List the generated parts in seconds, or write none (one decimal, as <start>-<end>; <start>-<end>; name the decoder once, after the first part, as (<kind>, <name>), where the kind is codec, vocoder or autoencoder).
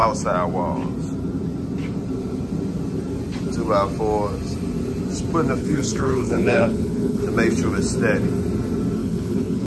5.6-7.2 (codec, HILCodec); 9.0-9.7